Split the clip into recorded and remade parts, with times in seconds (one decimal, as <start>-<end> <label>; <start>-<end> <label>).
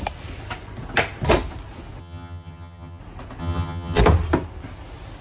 0.0-2.0 recorded; 2.0-3.0 remade; 3.0-3.4 recorded; 3.4-4.0 remade; 4.0-5.2 recorded